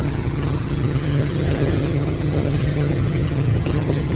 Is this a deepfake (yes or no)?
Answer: yes